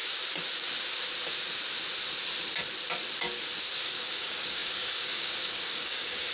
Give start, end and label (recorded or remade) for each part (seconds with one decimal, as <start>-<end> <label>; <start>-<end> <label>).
0.0-3.8 recorded; 3.8-6.3 remade